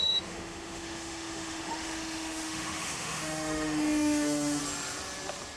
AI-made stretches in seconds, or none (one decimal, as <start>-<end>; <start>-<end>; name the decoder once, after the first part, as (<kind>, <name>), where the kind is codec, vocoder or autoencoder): 0.0-4.6 (autoencoder, DAC-VAE)

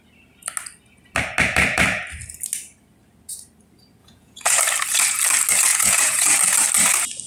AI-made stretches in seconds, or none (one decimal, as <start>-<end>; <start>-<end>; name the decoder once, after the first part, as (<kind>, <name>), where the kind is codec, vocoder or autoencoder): 4.0-4.6 (vocoder, Vocos); 5.7-6.4

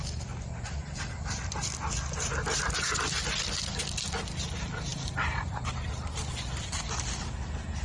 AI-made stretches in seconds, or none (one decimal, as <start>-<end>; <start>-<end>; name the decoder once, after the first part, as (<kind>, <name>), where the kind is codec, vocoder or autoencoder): none

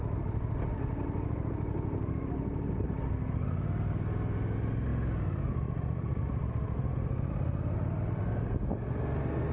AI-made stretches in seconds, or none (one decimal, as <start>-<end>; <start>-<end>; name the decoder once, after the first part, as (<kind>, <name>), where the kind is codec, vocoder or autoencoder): none

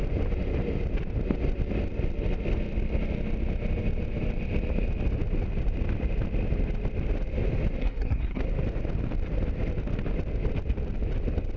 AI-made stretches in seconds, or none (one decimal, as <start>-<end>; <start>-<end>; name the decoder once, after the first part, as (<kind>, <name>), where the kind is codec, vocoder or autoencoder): 7.8-8.4 (codec, SNAC)

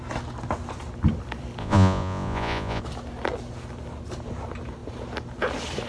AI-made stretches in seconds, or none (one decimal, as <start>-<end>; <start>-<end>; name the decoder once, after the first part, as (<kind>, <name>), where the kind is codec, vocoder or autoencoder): 1.6-2.8 (vocoder, Vocos)